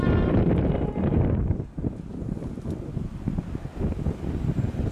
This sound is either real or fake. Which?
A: real